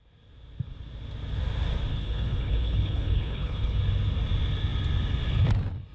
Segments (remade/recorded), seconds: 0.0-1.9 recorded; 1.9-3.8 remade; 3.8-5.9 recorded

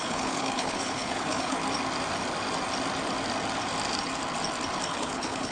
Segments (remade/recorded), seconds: 0.0-1.6 remade; 1.6-4.9 recorded; 4.9-5.5 remade

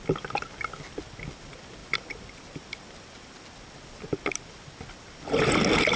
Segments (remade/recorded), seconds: 0.0-6.0 recorded

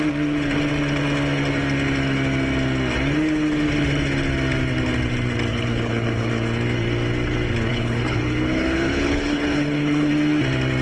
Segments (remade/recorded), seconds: 0.0-5.5 recorded; 5.5-6.3 remade; 6.3-7.7 recorded; 7.7-10.1 remade; 10.1-10.8 recorded

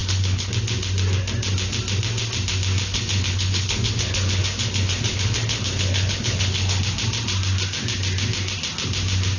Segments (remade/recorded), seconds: 0.0-0.5 remade; 0.5-2.9 recorded; 2.9-6.8 remade; 6.8-9.4 recorded

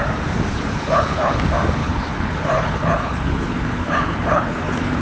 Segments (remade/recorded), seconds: 0.0-0.5 recorded; 0.5-1.4 remade; 1.4-1.8 recorded; 1.8-5.0 remade

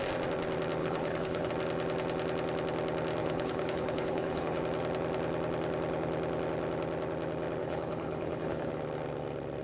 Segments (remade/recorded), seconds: 0.0-0.8 recorded; 0.8-1.5 remade; 1.5-3.2 recorded; 3.2-4.6 remade; 4.6-7.6 recorded; 7.6-8.7 remade; 8.7-9.6 recorded